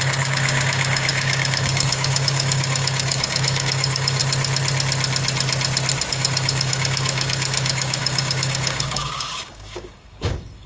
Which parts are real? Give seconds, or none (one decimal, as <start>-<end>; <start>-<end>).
4.2-6.1